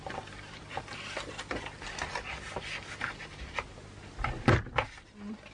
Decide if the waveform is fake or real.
real